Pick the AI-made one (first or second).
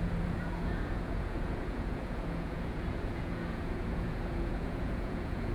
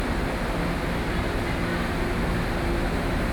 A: first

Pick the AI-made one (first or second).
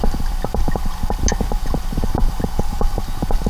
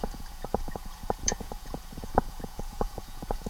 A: second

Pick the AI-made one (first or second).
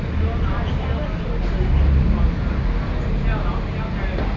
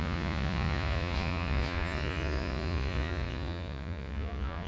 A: second